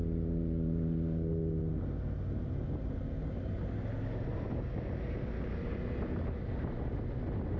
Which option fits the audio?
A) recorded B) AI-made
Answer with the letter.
A